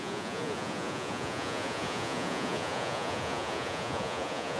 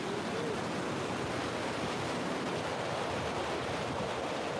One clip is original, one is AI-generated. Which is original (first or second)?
second